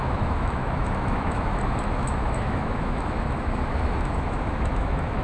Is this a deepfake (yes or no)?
yes